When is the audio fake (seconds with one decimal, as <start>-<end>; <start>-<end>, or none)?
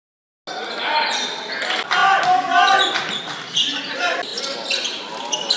none